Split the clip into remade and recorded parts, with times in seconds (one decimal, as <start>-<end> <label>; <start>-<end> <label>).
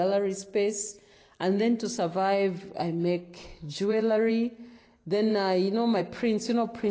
0.0-3.5 recorded; 3.5-4.3 remade; 4.3-6.9 recorded